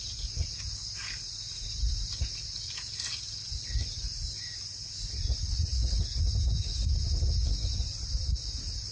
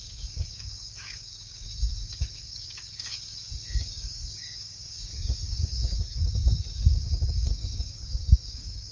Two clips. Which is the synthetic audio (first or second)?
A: second